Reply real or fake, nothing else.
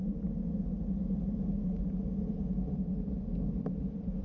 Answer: real